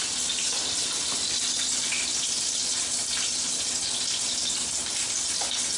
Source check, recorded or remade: recorded